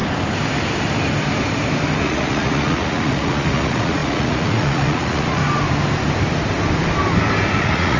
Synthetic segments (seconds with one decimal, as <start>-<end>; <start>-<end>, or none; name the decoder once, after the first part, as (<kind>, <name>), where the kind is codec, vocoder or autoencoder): 2.0-5.4 (vocoder, Vocos); 7.6-8.0